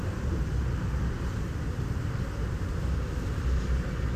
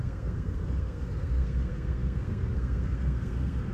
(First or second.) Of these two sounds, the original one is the first